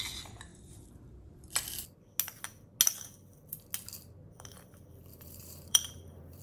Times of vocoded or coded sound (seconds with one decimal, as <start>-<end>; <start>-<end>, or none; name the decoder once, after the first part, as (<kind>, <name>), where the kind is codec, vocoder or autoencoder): 5.1-6.4 (vocoder, BigVGAN v2)